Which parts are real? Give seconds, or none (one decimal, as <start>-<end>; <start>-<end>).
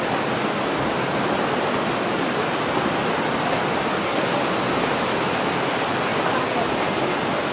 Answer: 0.0-7.5